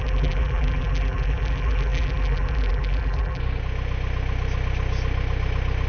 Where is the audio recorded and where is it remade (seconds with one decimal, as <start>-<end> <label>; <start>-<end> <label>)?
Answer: 0.0-3.4 remade; 3.4-5.9 recorded